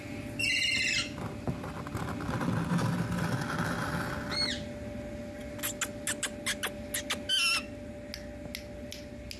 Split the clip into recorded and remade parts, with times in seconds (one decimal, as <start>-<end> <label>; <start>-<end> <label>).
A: 0.0-9.4 recorded